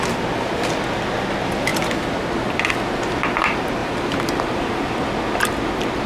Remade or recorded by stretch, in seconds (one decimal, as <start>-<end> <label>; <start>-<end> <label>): 0.0-3.8 recorded; 3.8-4.8 remade; 4.8-6.1 recorded